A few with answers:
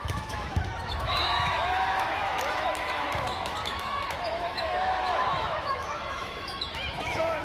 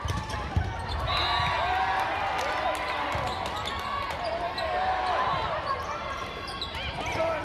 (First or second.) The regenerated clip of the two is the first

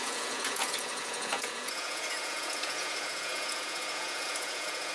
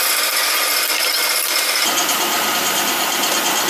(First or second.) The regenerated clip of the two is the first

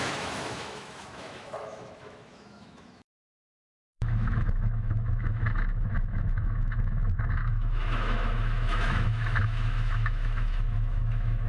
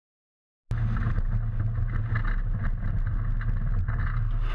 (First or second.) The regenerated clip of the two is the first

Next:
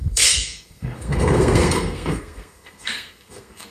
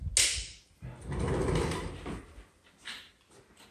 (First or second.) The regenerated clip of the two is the first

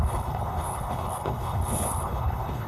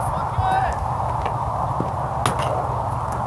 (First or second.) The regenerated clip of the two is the first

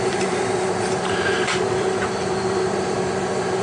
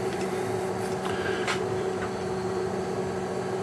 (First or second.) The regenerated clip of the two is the first